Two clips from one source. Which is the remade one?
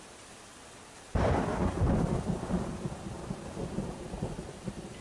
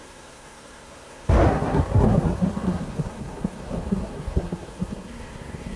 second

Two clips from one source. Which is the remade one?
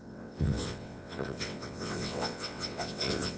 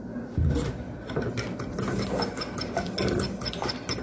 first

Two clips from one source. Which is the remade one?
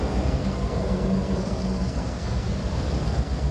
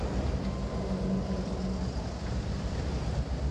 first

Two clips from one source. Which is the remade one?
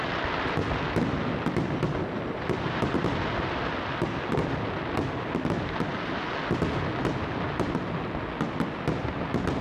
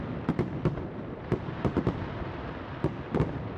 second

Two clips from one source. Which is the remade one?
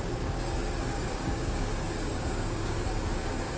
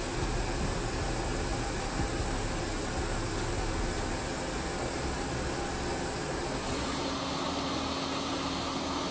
first